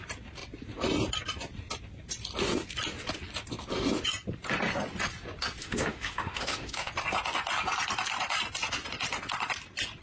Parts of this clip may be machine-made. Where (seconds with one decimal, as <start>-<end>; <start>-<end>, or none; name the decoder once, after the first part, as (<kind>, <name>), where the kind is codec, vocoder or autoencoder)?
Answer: 5.6-6.9 (autoencoder, DAC-VAE)